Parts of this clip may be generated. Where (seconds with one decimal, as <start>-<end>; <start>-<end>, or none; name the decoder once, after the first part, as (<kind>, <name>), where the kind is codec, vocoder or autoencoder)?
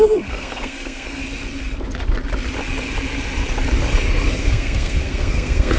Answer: 0.0-1.2 (codec, SNAC); 4.4-5.8